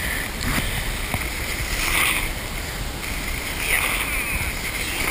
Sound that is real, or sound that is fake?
real